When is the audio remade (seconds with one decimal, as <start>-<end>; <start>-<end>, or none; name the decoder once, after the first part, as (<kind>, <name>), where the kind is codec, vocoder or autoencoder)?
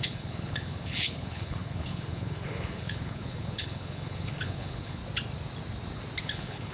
0.0-5.0 (codec, HILCodec); 6.2-6.7